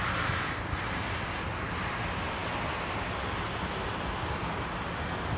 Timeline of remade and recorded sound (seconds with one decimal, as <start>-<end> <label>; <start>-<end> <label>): 0.0-5.4 recorded